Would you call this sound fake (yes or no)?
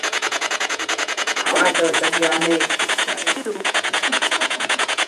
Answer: yes